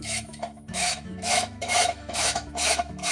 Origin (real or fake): fake